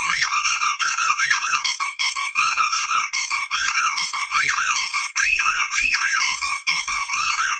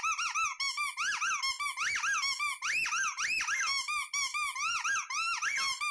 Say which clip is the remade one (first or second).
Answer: first